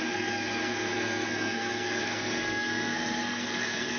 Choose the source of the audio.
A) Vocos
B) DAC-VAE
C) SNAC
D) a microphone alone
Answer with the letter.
C